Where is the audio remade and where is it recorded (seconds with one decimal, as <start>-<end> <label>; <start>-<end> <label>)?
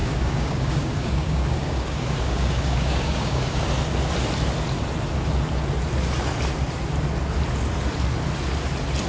0.0-3.7 remade; 3.7-9.1 recorded